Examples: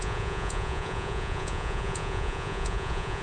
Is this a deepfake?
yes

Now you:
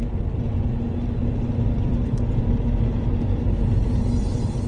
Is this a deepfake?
no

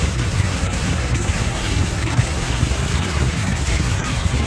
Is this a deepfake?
yes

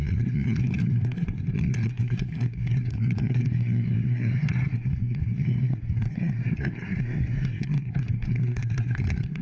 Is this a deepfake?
yes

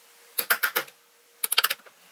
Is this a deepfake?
no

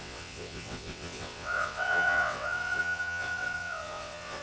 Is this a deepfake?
yes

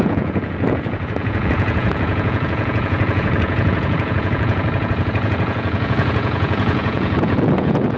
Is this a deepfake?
yes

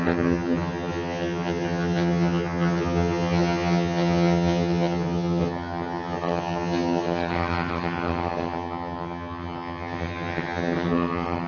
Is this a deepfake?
yes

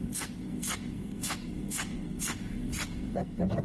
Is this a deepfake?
yes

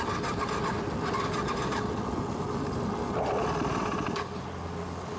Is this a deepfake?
no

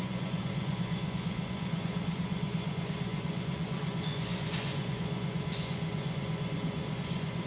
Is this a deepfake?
yes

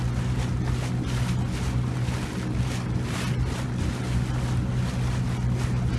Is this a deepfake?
no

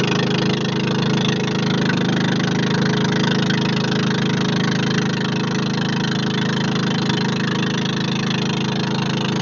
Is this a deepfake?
no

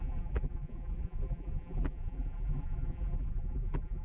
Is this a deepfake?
yes